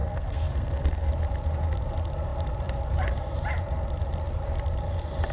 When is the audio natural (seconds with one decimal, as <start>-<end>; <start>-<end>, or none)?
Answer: 1.1-5.3